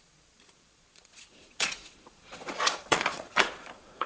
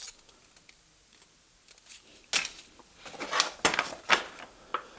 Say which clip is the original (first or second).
second